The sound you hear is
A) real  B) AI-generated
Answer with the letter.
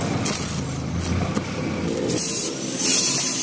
A